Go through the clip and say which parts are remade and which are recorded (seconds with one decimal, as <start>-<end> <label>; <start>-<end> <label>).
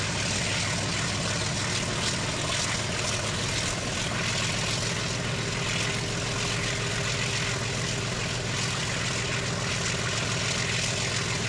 0.0-11.5 recorded